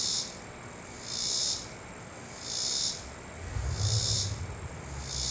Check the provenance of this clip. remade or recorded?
recorded